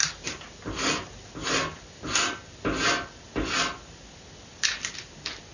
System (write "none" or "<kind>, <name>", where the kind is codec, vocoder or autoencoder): none